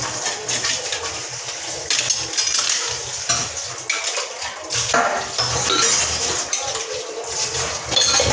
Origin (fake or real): real